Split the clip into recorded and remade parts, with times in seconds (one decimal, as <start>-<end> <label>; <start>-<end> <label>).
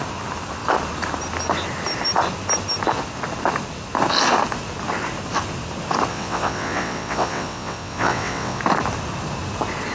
0.0-6.1 recorded; 6.1-8.6 remade; 8.6-9.9 recorded